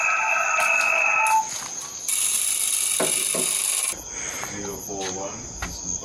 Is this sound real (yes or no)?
yes